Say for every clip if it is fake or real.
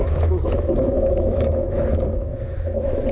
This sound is fake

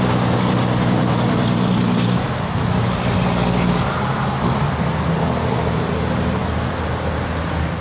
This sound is real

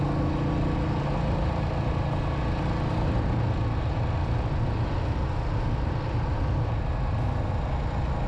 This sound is real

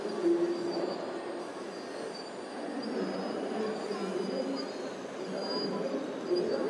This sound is real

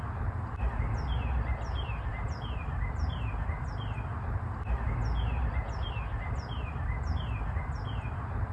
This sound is fake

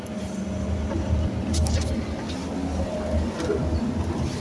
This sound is real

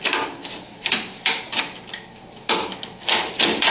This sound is real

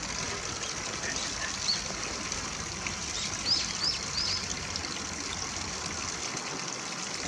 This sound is real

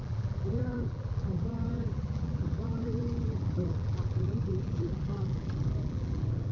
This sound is fake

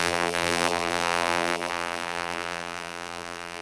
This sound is fake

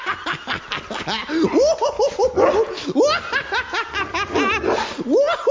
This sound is real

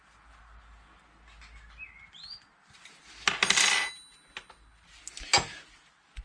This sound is real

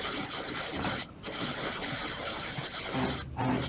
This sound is real